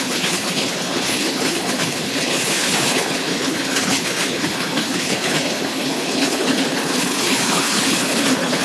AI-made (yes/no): yes